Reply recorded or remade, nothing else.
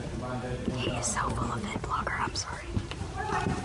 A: remade